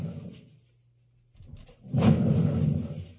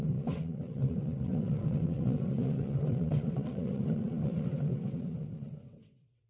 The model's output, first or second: second